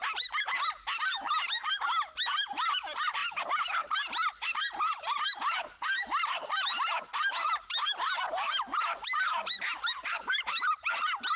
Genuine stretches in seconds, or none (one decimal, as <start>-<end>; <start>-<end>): 0.0-11.4